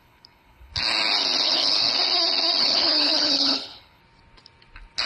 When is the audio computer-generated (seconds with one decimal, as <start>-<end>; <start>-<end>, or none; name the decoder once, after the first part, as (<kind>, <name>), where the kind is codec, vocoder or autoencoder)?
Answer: 0.0-0.7 (codec, HILCodec); 1.4-1.9; 2.6-4.0